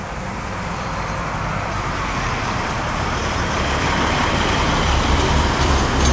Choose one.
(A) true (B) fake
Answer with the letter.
B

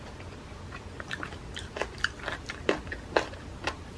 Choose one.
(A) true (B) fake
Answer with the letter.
A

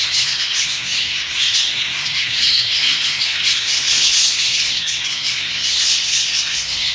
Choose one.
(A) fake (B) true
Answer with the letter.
A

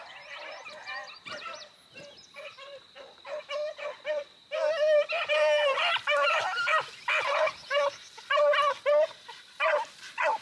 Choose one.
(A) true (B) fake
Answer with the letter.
A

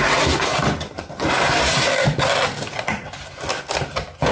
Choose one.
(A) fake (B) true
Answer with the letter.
B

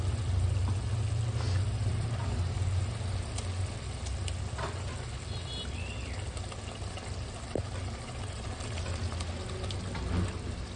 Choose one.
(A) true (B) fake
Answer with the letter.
A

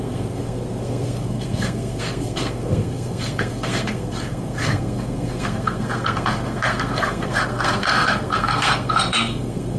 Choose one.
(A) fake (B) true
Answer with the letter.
A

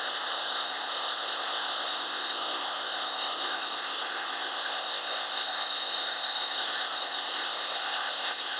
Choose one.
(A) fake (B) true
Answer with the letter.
A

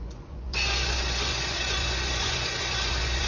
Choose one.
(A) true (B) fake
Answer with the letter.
B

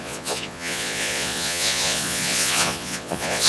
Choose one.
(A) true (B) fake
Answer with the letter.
B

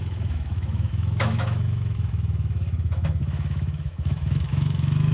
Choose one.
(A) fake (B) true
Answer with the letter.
A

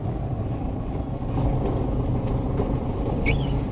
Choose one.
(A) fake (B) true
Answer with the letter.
B